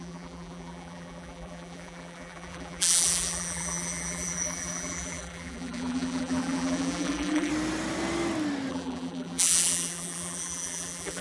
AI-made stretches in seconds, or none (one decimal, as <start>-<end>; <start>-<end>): 0.0-7.5; 8.7-11.2